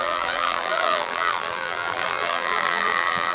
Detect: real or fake fake